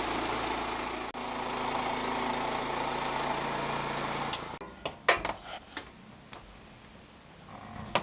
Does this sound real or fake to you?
real